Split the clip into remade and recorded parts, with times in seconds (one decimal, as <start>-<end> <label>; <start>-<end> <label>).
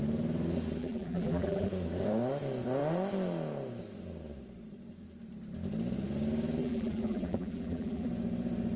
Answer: 0.0-0.8 recorded; 0.8-1.7 remade; 1.7-6.6 recorded; 6.6-8.1 remade; 8.1-8.8 recorded